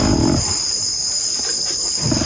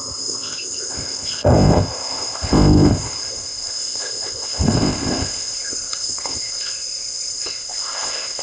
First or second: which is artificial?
second